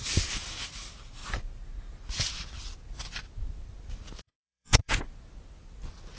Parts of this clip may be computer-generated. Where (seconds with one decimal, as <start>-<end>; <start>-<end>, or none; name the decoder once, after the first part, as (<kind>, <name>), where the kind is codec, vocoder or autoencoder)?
4.2-4.9 (vocoder, Vocos)